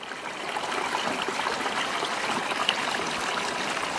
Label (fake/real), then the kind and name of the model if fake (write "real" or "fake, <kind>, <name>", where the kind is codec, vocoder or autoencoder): real